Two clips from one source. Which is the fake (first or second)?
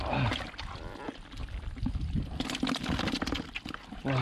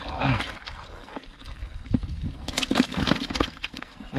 second